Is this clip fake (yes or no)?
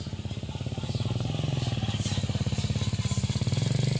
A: no